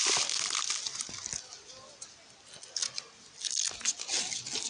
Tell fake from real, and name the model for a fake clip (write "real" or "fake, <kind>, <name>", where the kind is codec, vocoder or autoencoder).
real